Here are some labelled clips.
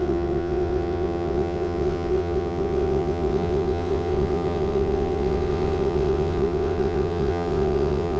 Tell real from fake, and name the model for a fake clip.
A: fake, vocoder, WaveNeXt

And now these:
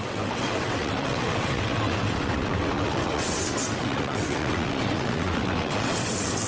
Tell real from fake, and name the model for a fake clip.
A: fake, vocoder, WaveNeXt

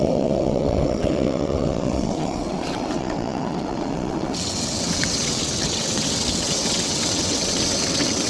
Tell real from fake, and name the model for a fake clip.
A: fake, vocoder, WaveNeXt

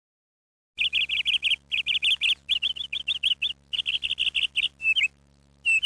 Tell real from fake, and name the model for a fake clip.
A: real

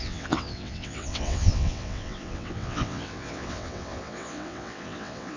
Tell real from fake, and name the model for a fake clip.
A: fake, vocoder, WaveNeXt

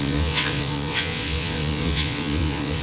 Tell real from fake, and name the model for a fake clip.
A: fake, vocoder, WaveNeXt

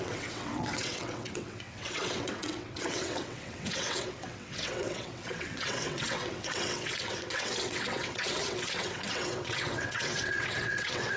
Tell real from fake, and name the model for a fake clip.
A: fake, vocoder, WaveNeXt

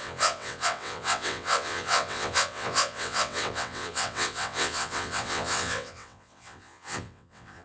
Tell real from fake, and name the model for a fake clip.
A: fake, vocoder, WaveNeXt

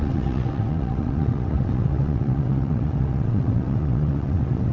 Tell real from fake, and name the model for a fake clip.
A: fake, vocoder, WaveNeXt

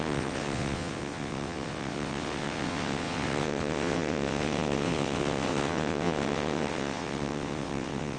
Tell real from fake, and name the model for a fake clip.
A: fake, vocoder, WaveNeXt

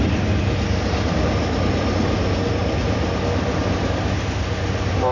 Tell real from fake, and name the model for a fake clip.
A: real